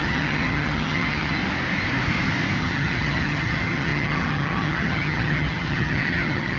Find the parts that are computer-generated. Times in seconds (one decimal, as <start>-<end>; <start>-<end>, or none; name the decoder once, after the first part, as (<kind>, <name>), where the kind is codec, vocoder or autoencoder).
0.0-1.4 (vocoder, HiFi-GAN); 2.6-6.6